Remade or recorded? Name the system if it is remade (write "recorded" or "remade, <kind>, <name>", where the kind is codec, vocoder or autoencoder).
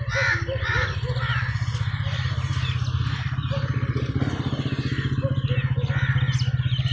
recorded